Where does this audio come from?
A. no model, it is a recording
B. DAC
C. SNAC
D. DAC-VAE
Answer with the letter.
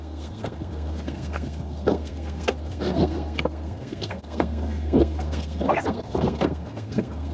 C